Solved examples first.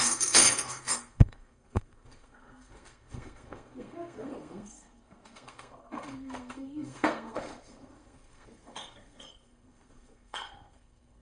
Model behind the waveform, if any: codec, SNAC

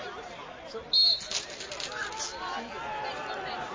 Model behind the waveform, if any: none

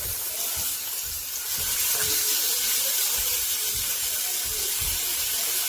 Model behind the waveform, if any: none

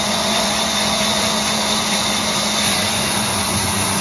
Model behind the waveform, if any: vocoder, Vocos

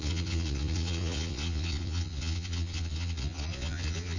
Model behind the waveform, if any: vocoder, Vocos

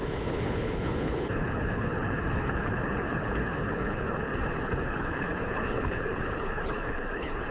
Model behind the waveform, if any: codec, HILCodec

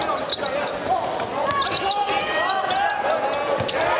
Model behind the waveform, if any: none